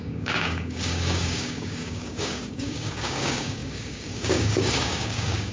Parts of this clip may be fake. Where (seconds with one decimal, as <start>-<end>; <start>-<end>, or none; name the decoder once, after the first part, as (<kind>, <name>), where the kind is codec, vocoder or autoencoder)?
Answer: 0.0-5.5 (codec, DAC)